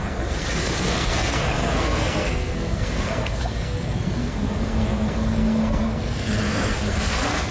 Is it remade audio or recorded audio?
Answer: remade